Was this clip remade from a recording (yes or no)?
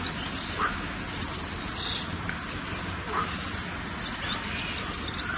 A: no